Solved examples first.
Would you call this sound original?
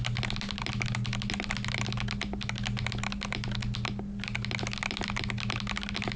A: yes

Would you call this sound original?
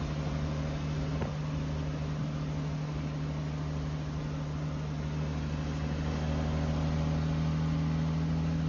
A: yes